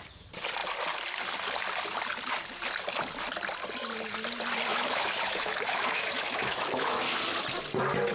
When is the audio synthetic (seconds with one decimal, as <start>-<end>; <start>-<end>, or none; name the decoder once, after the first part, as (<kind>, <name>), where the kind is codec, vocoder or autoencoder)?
4.7-7.0 (autoencoder, DAC-VAE)